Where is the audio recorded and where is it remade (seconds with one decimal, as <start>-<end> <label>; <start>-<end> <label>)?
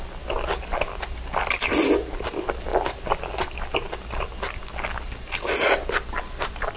0.0-6.8 recorded